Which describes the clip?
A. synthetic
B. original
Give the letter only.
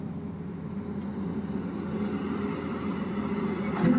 B